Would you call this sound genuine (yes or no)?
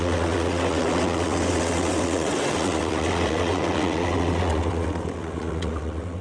no